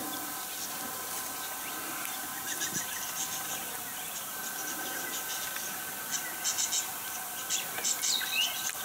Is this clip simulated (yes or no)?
no